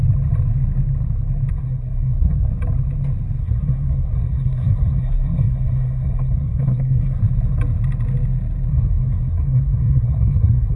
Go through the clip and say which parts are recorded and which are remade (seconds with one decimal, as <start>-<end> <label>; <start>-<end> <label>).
0.0-1.5 recorded; 1.5-2.5 remade; 2.5-3.4 recorded; 3.4-7.2 remade; 7.2-8.7 recorded; 8.7-10.8 remade